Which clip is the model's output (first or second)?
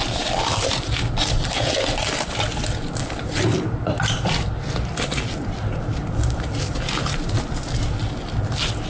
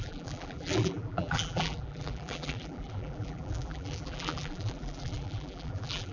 second